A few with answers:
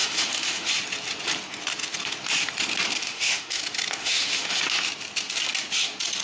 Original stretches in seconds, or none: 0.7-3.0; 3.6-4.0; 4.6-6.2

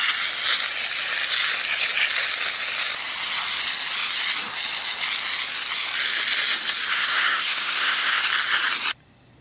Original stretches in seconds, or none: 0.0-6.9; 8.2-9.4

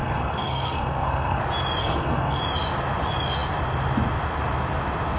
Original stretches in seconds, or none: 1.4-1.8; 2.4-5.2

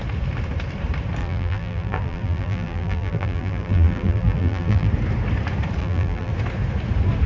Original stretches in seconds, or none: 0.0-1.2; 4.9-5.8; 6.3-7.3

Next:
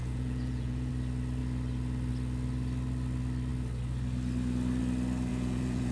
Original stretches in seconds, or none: 0.9-5.3